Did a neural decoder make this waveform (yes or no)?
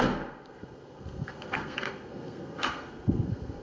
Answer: yes